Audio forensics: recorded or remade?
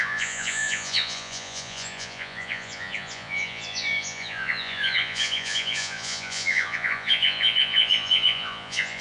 remade